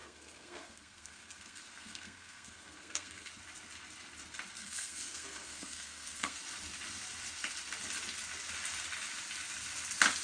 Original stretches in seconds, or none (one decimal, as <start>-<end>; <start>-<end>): 3.3-4.6; 6.4-10.2